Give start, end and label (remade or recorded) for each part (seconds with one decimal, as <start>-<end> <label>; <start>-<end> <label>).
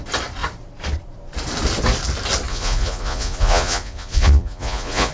0.0-2.5 recorded; 2.5-5.1 remade